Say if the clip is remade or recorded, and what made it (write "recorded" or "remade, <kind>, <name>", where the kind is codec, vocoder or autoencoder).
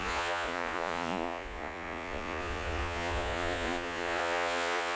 remade, vocoder, Vocos